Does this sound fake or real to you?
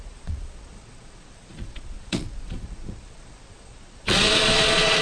fake